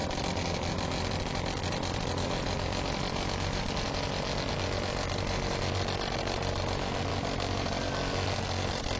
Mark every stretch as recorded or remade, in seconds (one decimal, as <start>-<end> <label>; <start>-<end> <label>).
0.0-9.0 recorded